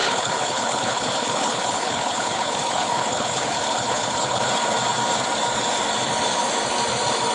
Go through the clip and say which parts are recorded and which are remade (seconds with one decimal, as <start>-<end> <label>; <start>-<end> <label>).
0.0-4.4 remade; 4.4-7.3 recorded